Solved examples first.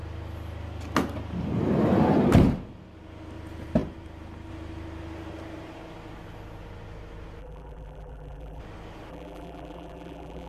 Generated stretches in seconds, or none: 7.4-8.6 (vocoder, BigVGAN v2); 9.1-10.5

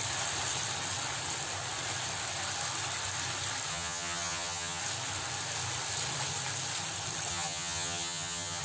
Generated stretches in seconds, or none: 3.7-4.8 (vocoder, HiFi-GAN); 7.3-8.6

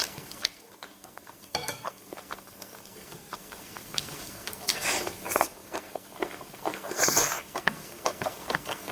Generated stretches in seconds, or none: 0.0-8.9 (codec, SNAC)

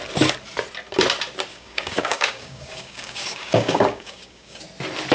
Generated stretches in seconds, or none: 1.5-4.6 (codec, DAC)

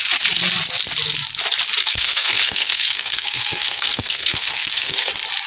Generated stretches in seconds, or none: 1.8-5.1 (codec, SNAC)

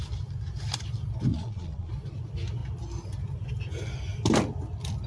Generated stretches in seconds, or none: 1.3-1.9 (vocoder, Vocos)

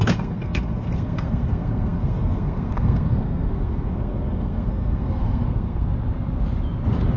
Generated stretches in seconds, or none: 0.0-5.9 (codec, SNAC)

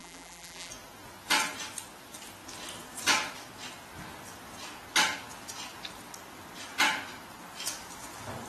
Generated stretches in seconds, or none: 0.0-0.7 (vocoder, BigVGAN v2)